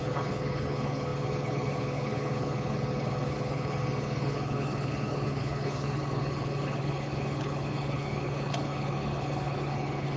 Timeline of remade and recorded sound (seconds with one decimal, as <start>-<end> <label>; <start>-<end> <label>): 0.0-10.2 remade